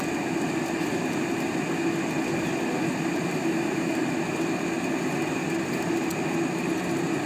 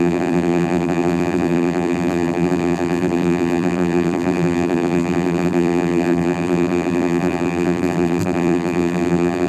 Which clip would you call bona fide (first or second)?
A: first